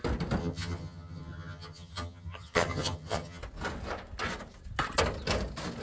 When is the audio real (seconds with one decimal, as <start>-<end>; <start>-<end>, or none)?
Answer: 0.0-0.4; 3.4-5.8

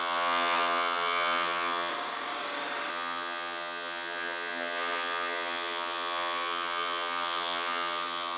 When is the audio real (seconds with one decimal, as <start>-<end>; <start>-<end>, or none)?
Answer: 1.9-2.9

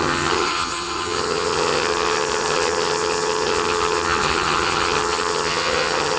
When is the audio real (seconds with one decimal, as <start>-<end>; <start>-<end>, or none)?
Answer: none

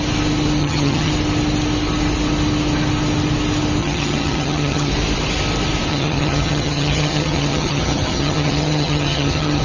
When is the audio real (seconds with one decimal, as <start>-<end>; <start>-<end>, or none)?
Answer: 0.0-0.6; 1.1-3.8; 4.9-5.9

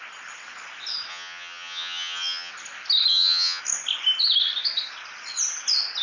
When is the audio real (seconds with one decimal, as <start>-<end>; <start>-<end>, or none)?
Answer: 0.0-1.1; 2.5-3.1; 3.6-6.0

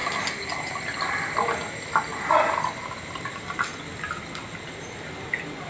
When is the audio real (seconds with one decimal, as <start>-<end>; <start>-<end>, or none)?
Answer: 0.0-5.7